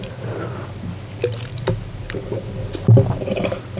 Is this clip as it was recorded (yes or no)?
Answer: yes